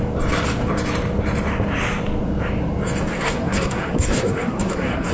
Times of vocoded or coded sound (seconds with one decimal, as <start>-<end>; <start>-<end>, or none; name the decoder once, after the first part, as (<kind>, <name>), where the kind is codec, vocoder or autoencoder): 3.1-5.1 (codec, SNAC)